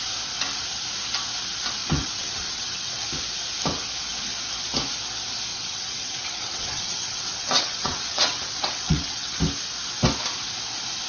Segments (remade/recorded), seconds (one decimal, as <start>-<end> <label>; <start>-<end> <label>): 0.0-1.8 recorded; 1.8-3.1 remade; 3.1-5.5 recorded; 5.5-9.4 remade; 9.4-11.1 recorded